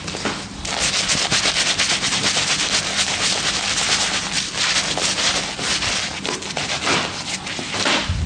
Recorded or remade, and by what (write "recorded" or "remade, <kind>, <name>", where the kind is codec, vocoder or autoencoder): recorded